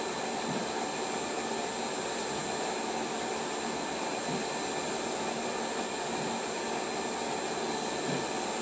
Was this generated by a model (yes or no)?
no